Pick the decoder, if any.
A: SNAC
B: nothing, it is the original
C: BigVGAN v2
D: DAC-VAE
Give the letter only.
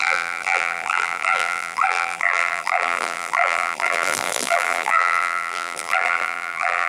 C